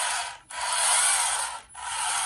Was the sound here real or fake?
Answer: real